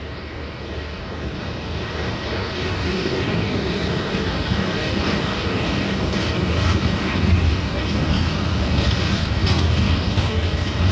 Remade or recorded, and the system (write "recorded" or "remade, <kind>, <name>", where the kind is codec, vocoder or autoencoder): remade, codec, DAC